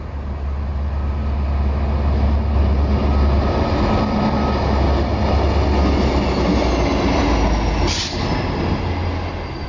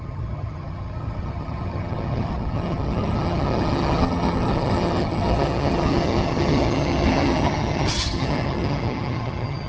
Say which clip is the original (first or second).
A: first